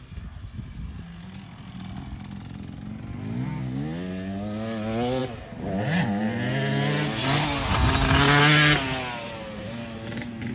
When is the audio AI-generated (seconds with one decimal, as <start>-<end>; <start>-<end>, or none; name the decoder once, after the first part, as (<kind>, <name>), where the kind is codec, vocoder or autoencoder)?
none

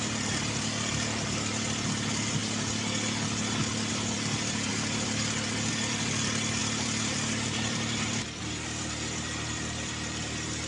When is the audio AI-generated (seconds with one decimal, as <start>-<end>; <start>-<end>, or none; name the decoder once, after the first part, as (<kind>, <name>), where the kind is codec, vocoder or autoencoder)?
0.0-2.4 (vocoder, BigVGAN v2); 3.9-10.7

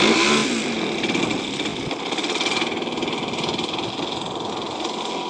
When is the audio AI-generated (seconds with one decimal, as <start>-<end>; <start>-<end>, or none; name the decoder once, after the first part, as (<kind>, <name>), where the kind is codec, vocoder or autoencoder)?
none

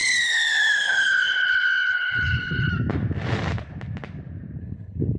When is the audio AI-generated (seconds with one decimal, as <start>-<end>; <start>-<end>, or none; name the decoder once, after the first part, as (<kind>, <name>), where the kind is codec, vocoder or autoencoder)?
0.0-2.7 (codec, HILCodec); 4.6-5.2

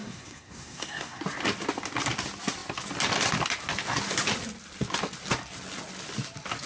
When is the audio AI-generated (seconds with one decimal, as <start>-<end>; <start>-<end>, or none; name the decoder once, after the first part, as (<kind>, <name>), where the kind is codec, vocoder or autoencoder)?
0.0-1.2 (codec, SNAC)

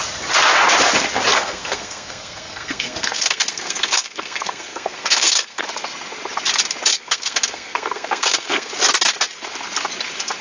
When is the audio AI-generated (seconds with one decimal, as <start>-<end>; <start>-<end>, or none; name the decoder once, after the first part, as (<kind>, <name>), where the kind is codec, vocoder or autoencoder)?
1.3-5.6 (codec, SNAC); 6.9-8.7

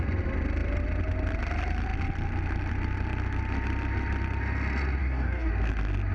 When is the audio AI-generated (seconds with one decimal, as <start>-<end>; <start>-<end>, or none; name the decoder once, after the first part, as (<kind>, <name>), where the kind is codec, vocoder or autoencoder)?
5.0-5.5 (codec, DAC)